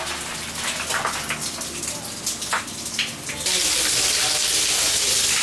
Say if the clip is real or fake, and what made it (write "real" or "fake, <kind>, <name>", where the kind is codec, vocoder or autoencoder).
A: real